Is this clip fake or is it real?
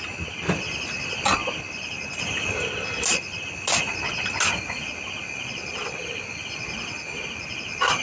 real